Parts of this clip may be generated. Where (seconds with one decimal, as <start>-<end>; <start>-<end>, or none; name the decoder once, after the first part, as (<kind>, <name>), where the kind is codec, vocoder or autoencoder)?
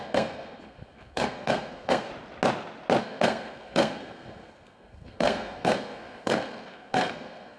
0.0-2.1 (codec, SNAC); 3.0-7.6